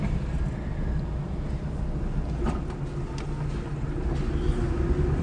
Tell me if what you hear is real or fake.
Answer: real